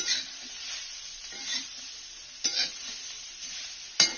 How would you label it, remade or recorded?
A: recorded